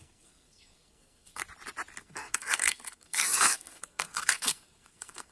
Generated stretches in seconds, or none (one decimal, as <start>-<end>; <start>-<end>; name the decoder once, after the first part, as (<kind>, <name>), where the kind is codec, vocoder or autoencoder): 0.0-1.4 (codec, SNAC); 2.0-5.3